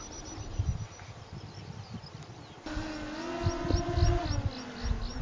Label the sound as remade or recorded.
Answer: recorded